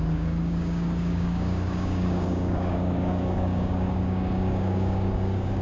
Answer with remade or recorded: remade